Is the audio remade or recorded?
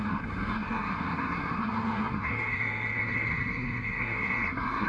remade